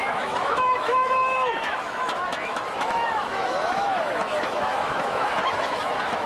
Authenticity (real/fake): fake